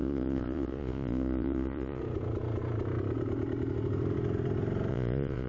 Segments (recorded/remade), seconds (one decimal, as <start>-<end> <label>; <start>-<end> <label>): 0.0-2.0 remade; 2.0-4.9 recorded; 4.9-5.5 remade